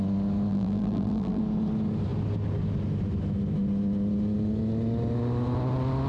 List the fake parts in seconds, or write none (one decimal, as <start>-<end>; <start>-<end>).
0.5-1.4